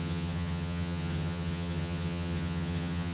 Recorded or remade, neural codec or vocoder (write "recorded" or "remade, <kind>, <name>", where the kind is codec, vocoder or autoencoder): remade, vocoder, HiFi-GAN